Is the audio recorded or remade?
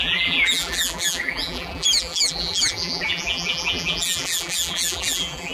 remade